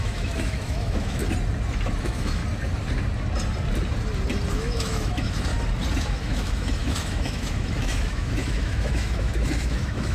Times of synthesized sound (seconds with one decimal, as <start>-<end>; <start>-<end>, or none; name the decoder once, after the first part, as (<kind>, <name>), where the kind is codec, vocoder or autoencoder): 0.0-1.2 (autoencoder, DAC-VAE); 2.0-2.4; 4.5-5.5; 6.0-10.1